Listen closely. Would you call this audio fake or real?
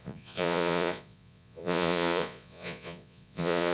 fake